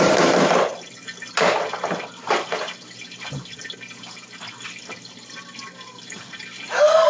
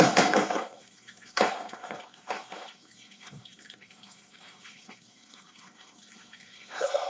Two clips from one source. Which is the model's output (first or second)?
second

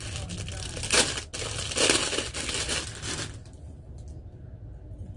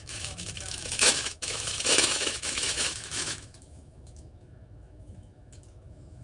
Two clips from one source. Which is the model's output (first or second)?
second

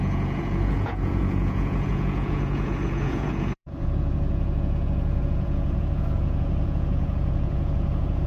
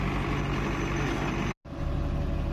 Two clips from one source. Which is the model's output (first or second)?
first